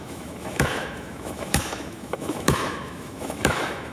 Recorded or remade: remade